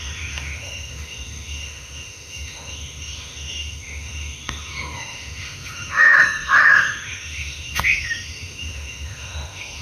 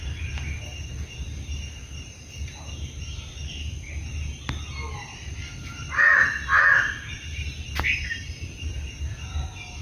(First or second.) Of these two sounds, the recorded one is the second